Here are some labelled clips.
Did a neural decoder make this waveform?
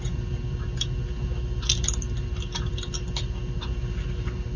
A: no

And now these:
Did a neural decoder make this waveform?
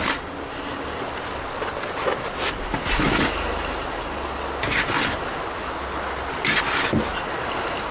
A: no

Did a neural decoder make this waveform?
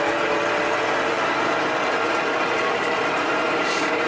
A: no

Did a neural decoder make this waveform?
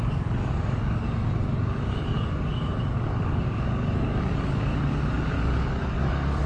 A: yes